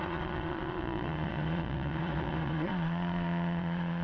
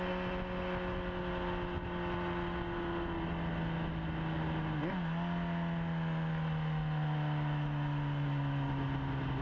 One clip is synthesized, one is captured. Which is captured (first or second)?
second